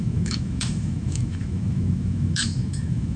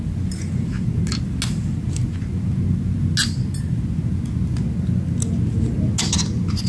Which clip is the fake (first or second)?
first